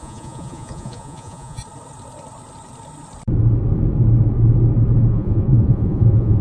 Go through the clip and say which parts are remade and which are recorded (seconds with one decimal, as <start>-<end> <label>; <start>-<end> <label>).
0.0-1.6 remade; 1.6-5.1 recorded; 5.1-6.4 remade